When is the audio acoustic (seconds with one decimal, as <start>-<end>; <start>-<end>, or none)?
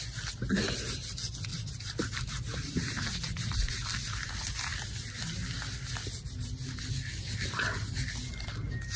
0.0-1.5; 3.7-9.0